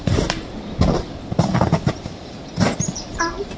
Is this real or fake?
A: real